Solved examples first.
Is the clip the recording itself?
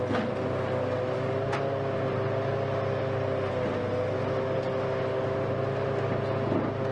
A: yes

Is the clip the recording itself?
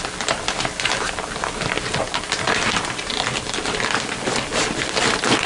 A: yes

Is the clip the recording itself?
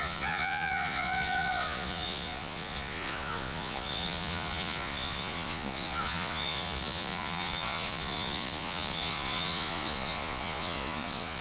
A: no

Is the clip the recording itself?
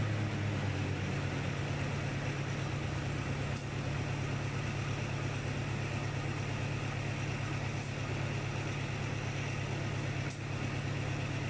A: yes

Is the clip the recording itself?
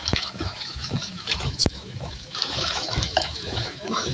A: no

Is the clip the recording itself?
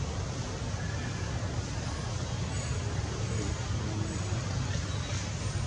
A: yes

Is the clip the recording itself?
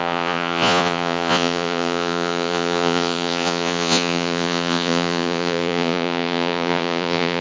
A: no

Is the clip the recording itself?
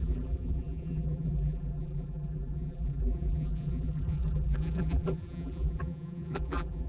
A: no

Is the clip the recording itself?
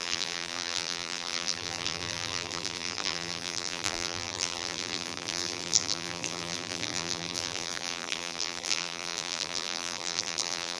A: no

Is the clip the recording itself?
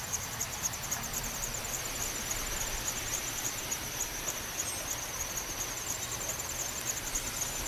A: yes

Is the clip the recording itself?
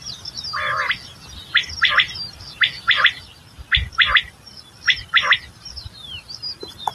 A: yes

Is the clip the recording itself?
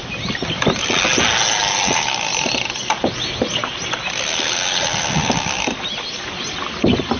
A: yes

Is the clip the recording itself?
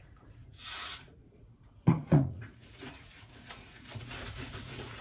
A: no